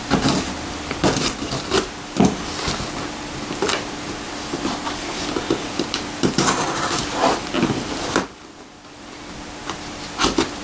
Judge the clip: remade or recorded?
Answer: recorded